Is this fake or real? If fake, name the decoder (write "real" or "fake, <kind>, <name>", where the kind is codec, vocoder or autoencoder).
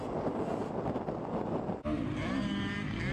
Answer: real